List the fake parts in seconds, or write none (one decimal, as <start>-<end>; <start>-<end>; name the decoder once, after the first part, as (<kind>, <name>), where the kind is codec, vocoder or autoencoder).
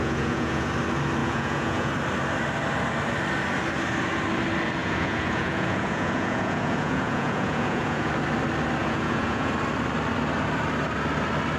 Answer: 0.0-0.7 (vocoder, Vocos); 1.2-1.9; 4.8-8.1; 8.8-9.5